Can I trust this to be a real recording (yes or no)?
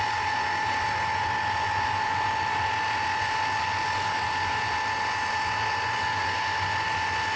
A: yes